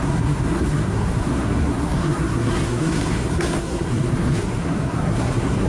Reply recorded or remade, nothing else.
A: remade